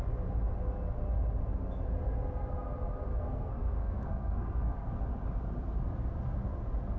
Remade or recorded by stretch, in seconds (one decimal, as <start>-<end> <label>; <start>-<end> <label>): 0.0-3.1 recorded; 3.1-5.0 remade; 5.0-7.0 recorded